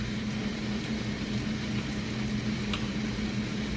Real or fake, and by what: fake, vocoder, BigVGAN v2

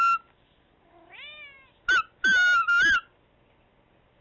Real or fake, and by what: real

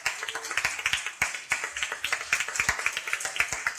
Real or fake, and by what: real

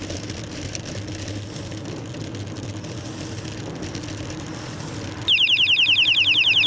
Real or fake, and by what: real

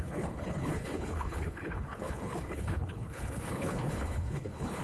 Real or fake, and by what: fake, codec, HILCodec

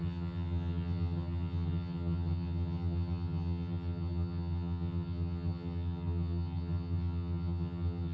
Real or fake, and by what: fake, vocoder, HiFi-GAN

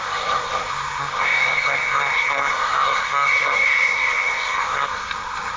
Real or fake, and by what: fake, codec, SNAC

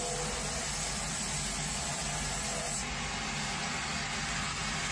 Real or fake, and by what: real